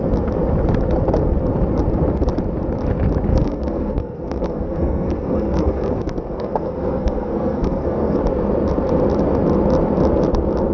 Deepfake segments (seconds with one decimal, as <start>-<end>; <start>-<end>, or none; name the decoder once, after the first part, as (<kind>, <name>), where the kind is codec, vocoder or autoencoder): 3.3-8.2 (codec, SNAC)